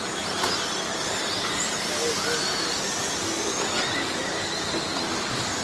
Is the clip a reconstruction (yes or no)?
no